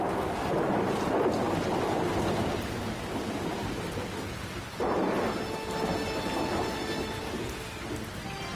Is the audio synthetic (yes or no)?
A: no